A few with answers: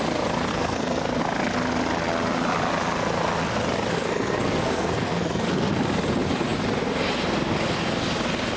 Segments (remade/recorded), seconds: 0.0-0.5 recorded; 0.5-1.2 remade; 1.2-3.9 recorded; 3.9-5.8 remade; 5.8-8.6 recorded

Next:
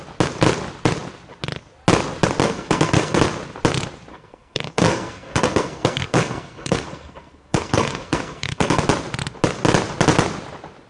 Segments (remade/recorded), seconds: 0.0-2.4 recorded; 2.4-3.2 remade; 3.2-4.1 recorded; 4.1-8.8 remade; 8.8-10.9 recorded